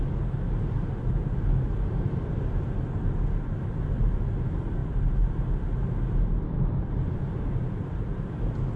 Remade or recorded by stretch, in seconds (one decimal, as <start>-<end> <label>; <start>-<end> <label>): 0.0-4.8 recorded; 4.8-5.4 remade; 5.4-8.8 recorded